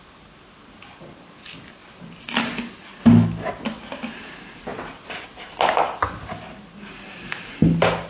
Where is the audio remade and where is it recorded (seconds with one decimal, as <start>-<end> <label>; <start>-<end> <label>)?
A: 0.0-8.1 recorded